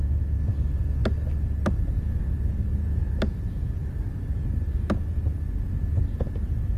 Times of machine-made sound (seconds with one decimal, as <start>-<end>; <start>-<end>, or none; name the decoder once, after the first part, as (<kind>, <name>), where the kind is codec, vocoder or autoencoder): none